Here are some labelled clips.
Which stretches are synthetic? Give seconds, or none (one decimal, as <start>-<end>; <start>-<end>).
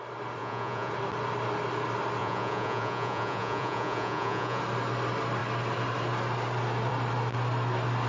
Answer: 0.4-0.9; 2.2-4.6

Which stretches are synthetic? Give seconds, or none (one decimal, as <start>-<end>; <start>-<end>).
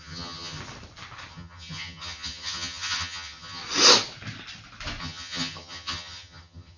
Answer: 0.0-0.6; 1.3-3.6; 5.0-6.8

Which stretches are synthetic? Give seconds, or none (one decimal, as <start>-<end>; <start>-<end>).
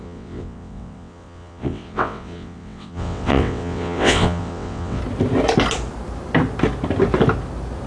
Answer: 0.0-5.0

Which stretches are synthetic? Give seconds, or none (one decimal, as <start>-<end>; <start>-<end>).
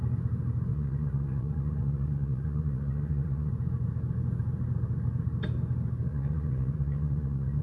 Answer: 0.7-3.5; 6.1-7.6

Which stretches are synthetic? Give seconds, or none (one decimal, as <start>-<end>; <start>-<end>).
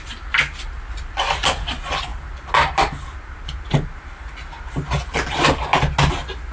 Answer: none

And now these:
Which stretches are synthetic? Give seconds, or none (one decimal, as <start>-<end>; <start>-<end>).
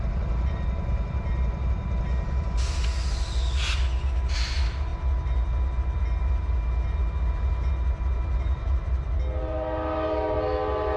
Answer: none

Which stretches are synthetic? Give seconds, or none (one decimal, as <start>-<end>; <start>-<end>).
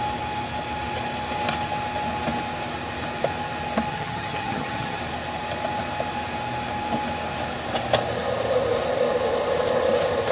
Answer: 3.9-5.0